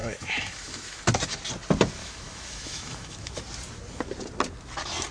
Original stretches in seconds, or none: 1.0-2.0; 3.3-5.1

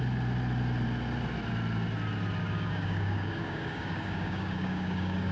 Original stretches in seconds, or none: 0.0-2.4

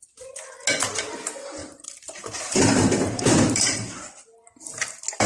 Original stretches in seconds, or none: 0.0-1.6; 4.1-5.3

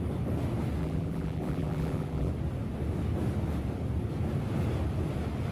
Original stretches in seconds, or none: 0.0-0.8; 2.3-5.5

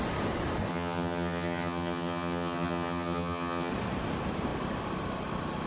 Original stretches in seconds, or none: 0.0-0.7; 3.7-5.7